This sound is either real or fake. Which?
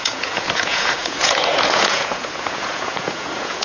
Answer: fake